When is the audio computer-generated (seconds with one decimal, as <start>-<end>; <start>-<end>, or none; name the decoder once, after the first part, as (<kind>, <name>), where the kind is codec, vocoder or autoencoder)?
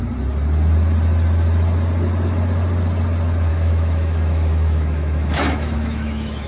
3.5-6.5 (autoencoder, DAC-VAE)